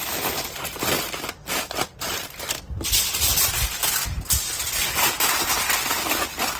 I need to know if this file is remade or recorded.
recorded